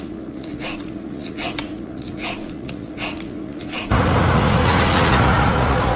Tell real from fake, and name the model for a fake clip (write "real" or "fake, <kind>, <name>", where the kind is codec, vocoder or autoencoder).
fake, vocoder, Vocos